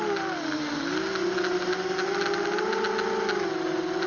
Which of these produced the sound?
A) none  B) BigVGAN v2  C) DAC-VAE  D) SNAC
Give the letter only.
A